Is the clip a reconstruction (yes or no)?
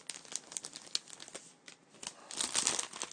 no